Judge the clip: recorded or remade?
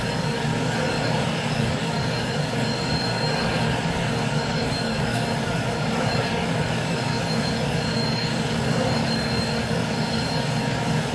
remade